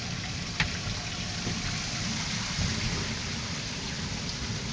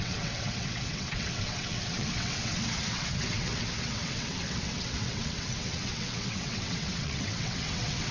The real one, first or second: first